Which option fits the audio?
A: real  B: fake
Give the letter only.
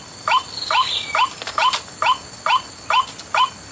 A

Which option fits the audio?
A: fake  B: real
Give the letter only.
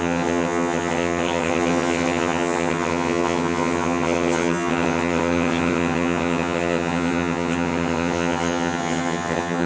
A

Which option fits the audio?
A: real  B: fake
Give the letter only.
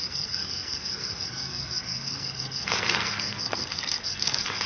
B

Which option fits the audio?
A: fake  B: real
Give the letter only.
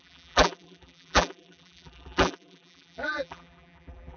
A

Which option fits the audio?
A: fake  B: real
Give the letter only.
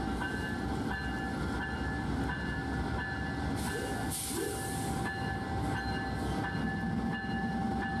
B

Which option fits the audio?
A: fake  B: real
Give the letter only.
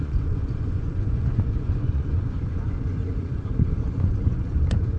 A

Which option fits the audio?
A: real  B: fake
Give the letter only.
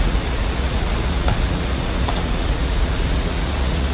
B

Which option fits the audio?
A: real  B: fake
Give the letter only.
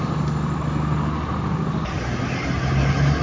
A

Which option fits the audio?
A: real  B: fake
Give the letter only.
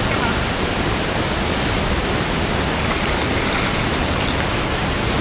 A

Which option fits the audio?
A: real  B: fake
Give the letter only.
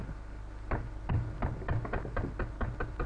A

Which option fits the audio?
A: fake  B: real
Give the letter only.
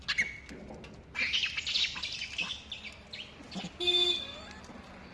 B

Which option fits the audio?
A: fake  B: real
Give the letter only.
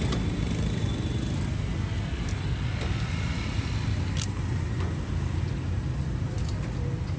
B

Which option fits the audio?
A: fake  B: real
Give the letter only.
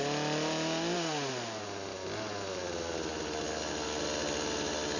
B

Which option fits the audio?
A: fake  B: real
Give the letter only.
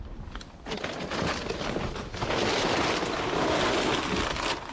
B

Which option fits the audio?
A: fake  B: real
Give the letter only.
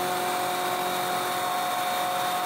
B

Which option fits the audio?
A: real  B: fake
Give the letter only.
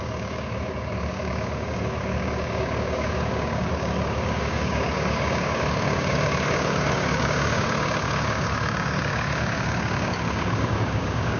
B